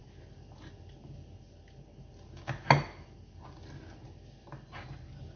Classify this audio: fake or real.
real